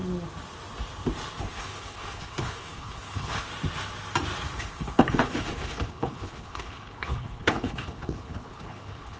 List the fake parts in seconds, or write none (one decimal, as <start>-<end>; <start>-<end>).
1.4-3.5; 4.6-9.2